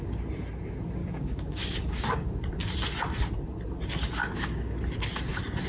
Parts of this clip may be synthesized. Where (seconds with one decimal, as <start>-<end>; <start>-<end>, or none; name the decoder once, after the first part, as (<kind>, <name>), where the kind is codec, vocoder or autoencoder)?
1.0-2.3 (codec, DAC); 4.2-4.8